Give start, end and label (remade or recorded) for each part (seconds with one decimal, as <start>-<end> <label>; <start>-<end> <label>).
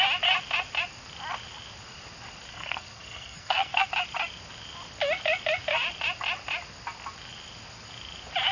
0.0-2.5 recorded; 2.5-3.9 remade; 3.9-8.5 recorded